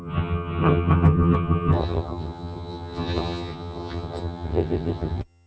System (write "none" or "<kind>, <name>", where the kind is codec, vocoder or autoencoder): vocoder, HiFi-GAN